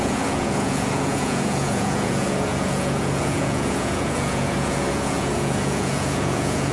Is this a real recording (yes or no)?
no